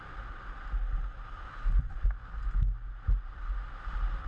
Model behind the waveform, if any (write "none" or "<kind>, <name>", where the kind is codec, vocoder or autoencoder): none